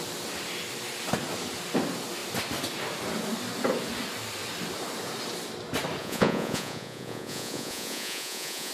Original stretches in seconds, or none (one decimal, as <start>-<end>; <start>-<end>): 0.0-6.0